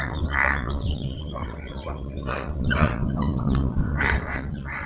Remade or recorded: remade